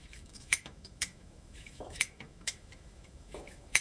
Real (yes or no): no